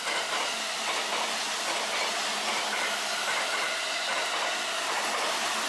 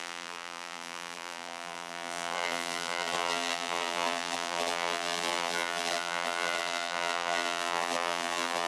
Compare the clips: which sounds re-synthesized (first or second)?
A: second